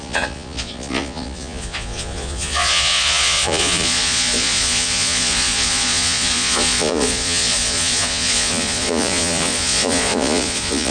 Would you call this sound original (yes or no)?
no